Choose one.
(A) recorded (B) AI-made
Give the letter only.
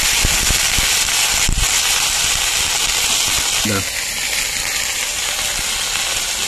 A